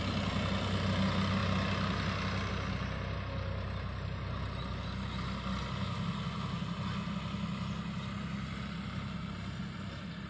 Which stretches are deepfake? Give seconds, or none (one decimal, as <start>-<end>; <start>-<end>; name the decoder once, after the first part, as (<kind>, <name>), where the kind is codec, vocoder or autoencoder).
none